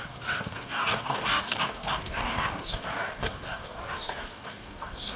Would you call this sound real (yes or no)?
no